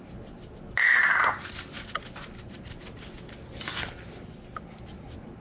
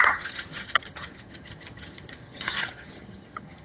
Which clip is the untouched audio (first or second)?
first